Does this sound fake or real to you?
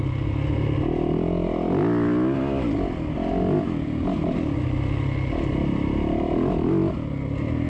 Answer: real